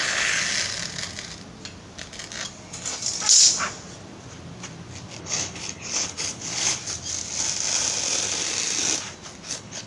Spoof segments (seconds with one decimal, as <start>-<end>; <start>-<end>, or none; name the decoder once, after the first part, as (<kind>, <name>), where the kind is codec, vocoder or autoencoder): 0.0-0.4 (codec, HILCodec); 5.2-6.8; 9.5-9.9